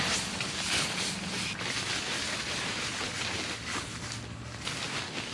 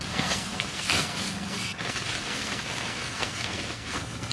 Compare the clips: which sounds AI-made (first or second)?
second